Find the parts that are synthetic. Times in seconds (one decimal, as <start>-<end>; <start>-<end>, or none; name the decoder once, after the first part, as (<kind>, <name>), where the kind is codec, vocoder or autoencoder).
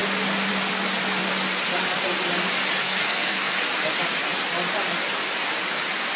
2.8-3.5 (codec, SNAC)